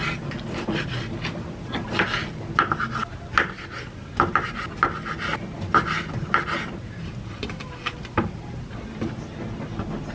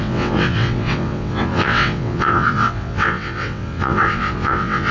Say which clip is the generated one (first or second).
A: second